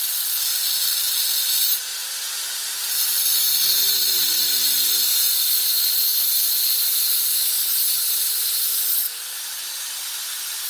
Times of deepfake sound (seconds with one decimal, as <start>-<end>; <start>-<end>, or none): none